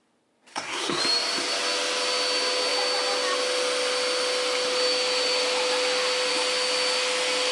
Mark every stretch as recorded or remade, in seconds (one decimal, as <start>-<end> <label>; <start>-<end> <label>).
0.0-0.5 recorded; 0.5-1.0 remade; 1.0-7.5 recorded